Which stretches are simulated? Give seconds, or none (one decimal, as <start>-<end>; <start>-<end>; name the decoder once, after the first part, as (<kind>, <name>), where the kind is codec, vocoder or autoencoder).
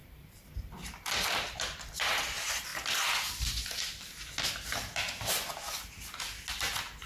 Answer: 0.0-2.7 (vocoder, BigVGAN v2)